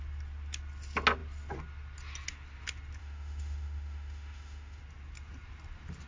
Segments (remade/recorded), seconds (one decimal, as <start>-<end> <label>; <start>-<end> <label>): 0.0-3.0 recorded; 3.0-4.8 remade; 4.8-6.1 recorded